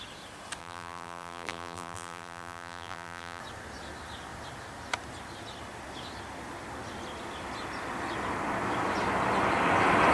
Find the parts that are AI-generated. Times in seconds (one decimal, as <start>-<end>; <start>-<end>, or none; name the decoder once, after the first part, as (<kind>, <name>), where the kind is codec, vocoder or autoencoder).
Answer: 0.6-3.4 (vocoder, BigVGAN v2)